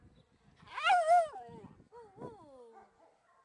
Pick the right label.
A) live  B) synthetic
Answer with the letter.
A